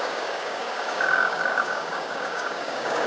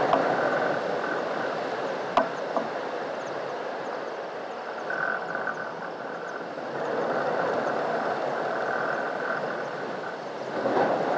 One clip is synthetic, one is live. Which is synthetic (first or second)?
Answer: first